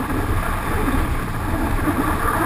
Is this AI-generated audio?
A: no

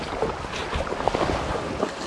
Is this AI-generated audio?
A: no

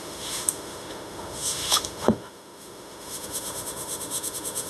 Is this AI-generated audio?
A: yes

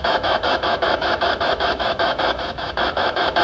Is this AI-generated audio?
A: yes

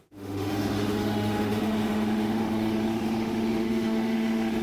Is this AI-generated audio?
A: yes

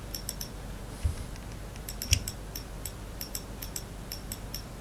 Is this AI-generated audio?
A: no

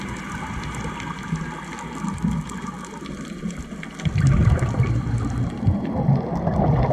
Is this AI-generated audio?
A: no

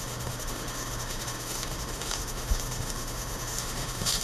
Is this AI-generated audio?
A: yes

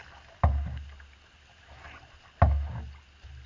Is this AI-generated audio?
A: no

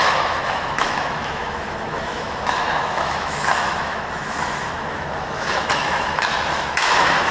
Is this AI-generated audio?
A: yes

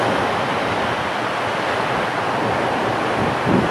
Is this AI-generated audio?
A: no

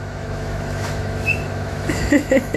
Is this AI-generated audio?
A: yes